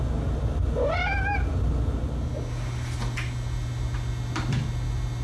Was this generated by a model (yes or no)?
no